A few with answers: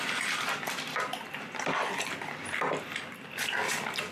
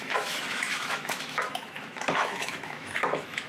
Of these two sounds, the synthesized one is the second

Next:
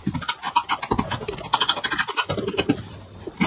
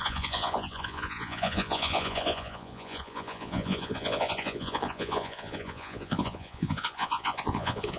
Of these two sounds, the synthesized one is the second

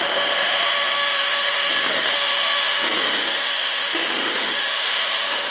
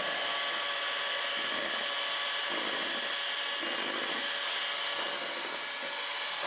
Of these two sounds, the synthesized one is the first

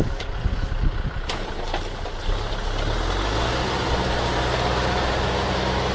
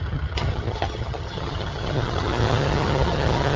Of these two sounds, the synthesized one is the second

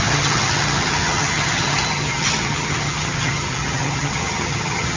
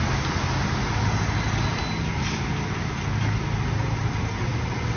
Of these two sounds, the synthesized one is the first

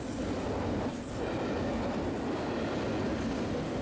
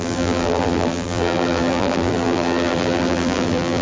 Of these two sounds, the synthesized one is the second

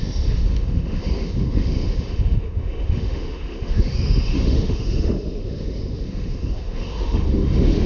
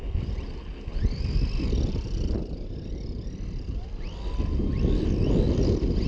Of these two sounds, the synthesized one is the first